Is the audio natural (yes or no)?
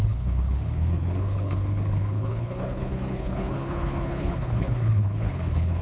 no